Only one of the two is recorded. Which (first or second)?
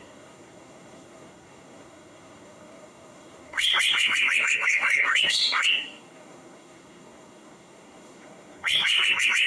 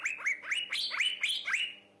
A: second